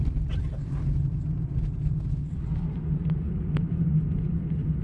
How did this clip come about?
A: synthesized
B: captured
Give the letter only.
B